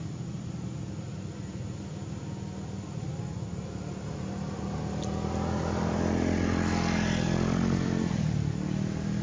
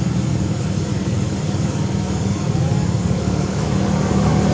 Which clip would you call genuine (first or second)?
first